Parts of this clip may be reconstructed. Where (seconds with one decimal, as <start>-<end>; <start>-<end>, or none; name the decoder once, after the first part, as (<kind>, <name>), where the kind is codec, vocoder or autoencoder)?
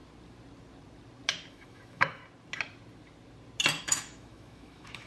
1.5-2.2 (autoencoder, DAC-VAE); 3.8-5.1